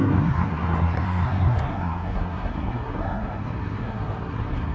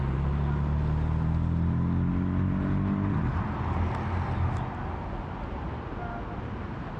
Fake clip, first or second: first